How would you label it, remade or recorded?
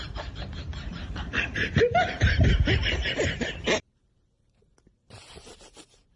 remade